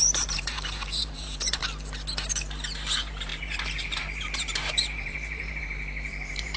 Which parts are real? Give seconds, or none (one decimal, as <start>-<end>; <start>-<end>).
1.6-2.3